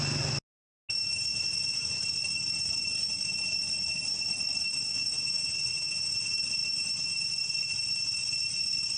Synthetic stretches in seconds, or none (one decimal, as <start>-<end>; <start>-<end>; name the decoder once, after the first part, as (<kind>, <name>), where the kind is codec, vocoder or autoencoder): 1.3-2.0 (vocoder, Vocos); 4.9-6.1